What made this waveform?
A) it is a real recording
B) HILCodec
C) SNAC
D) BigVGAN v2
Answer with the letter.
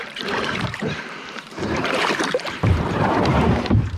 D